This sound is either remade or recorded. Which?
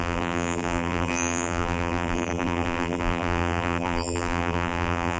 remade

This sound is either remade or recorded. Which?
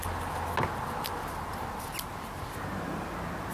recorded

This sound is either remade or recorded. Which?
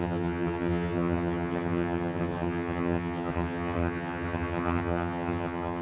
remade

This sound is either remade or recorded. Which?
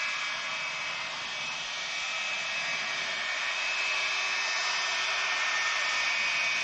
recorded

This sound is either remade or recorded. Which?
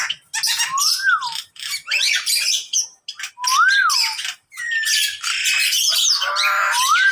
recorded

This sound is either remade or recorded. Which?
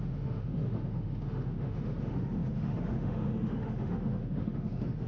remade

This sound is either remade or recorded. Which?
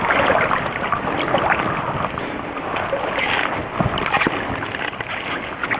recorded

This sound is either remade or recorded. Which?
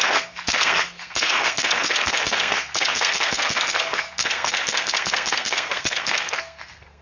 remade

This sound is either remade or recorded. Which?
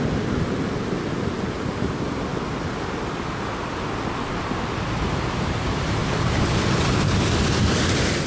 recorded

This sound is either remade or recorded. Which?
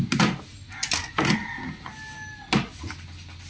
recorded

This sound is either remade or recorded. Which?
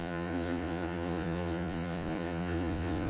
remade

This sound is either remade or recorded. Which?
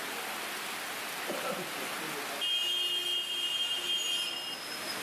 recorded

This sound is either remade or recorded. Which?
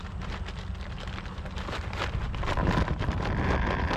recorded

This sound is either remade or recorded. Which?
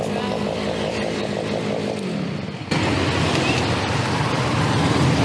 recorded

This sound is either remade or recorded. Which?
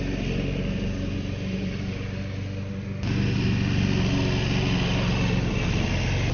recorded